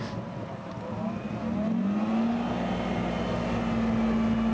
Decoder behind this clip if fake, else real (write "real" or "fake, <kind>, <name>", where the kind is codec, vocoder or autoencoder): real